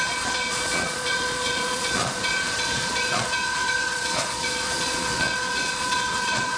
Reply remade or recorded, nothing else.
remade